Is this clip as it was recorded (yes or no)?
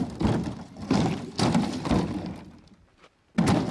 yes